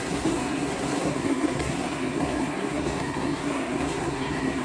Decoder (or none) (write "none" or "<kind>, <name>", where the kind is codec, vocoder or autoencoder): codec, SNAC